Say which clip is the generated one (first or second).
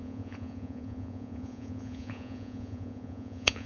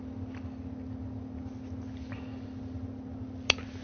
first